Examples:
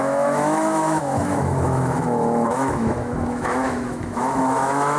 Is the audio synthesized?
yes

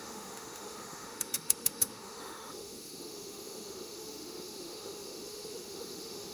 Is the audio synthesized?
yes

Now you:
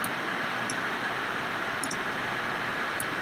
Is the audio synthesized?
no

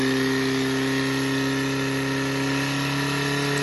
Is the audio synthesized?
no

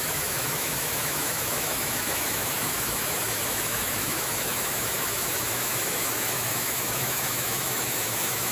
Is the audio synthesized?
yes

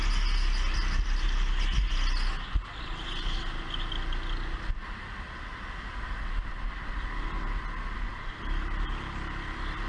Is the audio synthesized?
no